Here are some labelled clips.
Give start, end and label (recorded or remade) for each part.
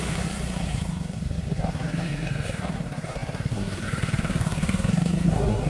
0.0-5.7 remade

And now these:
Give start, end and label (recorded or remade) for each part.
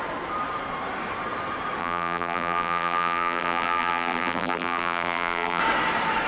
0.0-1.8 recorded; 1.8-5.6 remade; 5.6-6.3 recorded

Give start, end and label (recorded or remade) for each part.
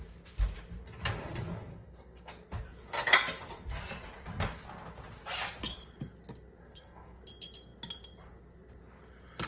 0.0-1.7 recorded; 1.7-2.3 remade; 2.3-6.6 recorded; 6.6-7.2 remade; 7.2-9.5 recorded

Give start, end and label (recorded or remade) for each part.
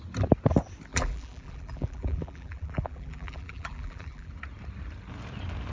0.0-0.9 recorded; 0.9-4.3 remade; 4.3-5.7 recorded